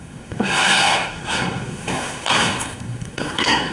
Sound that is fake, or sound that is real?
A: fake